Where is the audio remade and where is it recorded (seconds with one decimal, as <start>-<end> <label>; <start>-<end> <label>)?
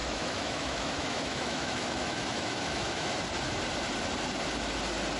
0.0-3.1 remade; 3.1-5.2 recorded